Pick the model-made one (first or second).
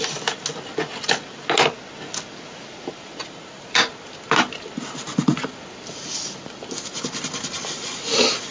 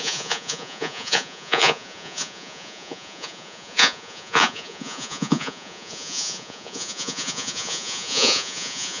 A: second